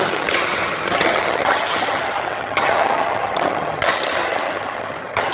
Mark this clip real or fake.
fake